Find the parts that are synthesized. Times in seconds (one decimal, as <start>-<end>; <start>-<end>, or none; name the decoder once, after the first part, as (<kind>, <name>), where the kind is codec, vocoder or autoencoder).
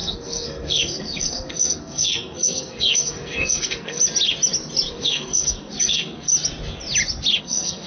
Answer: 0.0-4.0 (codec, SNAC); 4.9-6.3; 7.4-7.9